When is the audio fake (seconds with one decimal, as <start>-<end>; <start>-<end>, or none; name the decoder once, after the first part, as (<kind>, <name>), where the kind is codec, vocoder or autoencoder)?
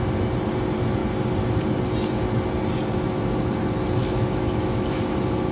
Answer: 4.0-5.0 (autoencoder, DAC-VAE)